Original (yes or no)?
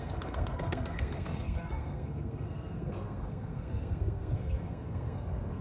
no